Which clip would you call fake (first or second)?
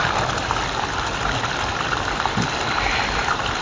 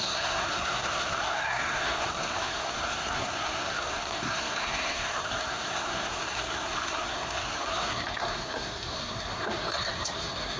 second